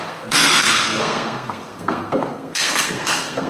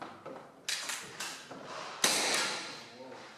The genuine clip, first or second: second